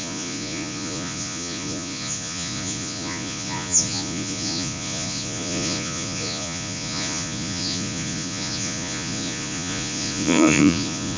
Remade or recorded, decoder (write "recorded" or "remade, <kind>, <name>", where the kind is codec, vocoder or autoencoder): remade, vocoder, Vocos